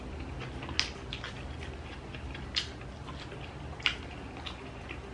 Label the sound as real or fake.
real